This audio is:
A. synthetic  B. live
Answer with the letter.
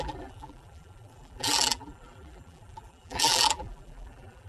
A